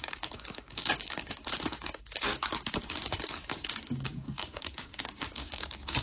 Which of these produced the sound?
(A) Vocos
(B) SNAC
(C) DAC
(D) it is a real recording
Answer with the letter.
C